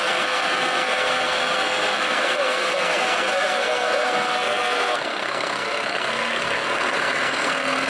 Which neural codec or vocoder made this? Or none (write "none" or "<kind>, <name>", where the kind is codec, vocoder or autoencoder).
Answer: codec, SNAC